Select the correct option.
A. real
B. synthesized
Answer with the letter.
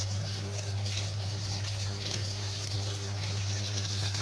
B